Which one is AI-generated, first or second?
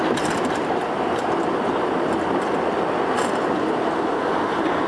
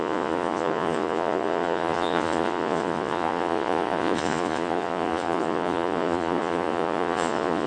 second